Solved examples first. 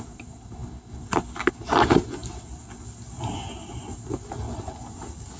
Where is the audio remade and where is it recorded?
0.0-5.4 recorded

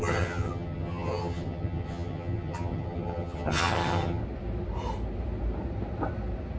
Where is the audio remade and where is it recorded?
0.0-4.2 remade; 4.2-6.6 recorded